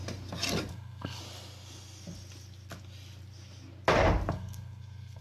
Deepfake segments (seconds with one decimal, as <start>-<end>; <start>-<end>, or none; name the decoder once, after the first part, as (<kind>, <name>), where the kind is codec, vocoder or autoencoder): 0.7-1.2 (codec, SNAC); 4.3-5.2